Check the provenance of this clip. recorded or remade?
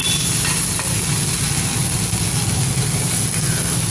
recorded